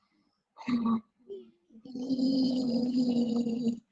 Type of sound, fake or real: fake